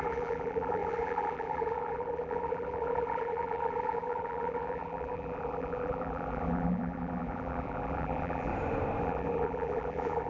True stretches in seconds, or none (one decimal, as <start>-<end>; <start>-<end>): 8.5-9.0